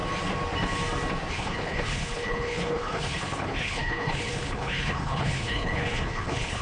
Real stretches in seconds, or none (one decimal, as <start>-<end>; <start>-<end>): 0.0-1.3